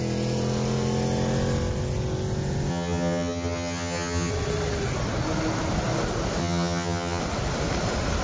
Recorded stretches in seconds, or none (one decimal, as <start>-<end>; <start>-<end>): 0.0-2.7; 4.3-6.4; 7.2-8.2